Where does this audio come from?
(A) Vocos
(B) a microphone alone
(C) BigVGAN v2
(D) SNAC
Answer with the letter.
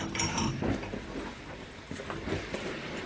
C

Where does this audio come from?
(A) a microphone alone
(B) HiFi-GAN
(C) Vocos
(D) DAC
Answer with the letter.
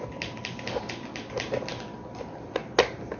A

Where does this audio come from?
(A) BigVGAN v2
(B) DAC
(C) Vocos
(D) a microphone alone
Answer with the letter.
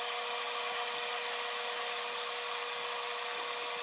D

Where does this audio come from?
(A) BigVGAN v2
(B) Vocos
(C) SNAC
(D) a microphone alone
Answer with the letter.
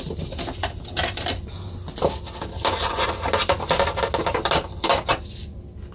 D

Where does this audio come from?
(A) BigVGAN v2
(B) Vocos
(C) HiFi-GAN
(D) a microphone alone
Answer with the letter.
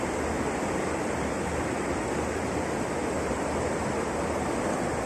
A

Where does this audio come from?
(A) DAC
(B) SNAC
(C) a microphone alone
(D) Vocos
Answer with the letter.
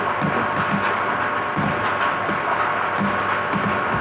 C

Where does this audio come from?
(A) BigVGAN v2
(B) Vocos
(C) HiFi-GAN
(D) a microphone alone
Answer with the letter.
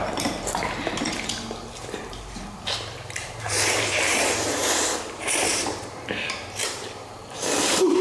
A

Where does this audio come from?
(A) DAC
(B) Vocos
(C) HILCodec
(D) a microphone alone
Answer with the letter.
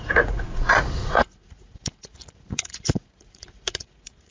B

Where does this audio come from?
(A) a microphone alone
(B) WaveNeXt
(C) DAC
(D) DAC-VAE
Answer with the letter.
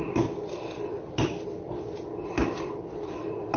A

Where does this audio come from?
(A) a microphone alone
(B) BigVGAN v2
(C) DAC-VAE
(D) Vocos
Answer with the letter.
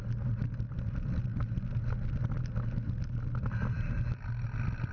A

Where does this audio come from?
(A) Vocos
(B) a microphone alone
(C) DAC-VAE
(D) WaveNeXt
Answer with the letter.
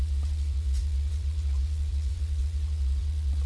D